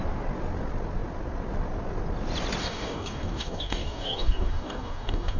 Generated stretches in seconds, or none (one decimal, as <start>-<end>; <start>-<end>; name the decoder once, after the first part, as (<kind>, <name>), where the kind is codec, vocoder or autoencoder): 2.6-5.4 (codec, DAC)